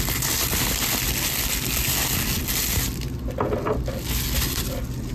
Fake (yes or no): no